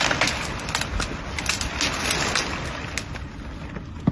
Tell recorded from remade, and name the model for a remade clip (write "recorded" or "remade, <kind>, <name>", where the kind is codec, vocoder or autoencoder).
recorded